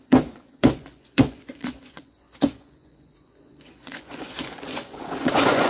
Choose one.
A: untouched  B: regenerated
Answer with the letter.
B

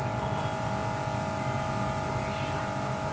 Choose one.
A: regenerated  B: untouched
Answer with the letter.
B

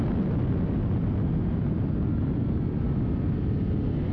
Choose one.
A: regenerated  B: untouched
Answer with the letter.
B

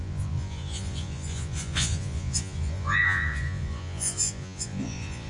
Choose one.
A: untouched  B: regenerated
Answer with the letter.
B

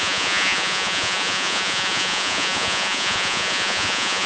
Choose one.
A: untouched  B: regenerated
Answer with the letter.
B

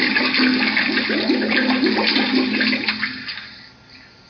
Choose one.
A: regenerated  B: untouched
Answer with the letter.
B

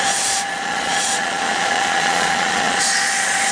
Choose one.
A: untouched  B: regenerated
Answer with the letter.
B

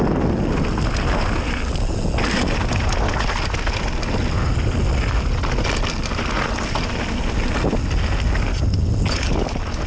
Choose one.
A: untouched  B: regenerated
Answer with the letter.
A